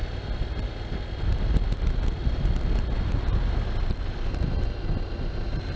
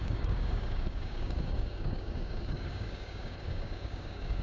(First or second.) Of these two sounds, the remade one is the second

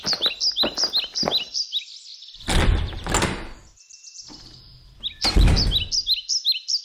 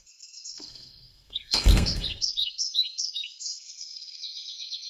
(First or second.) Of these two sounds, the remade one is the second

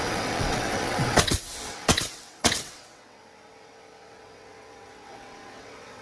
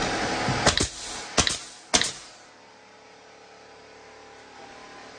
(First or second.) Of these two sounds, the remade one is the first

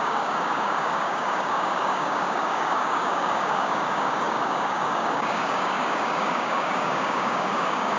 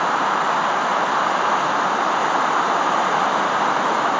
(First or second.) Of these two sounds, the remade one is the first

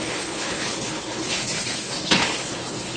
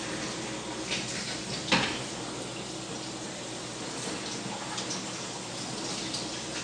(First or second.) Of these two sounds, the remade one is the first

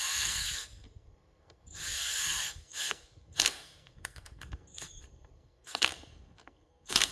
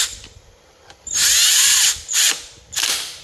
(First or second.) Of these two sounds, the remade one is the first